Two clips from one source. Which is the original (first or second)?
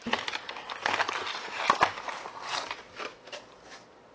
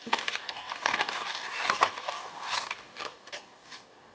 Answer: first